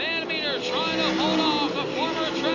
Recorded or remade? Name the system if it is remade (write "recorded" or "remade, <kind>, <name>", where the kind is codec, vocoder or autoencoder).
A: recorded